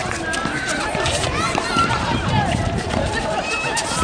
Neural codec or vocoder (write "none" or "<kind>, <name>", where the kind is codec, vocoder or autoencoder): vocoder, BigVGAN v2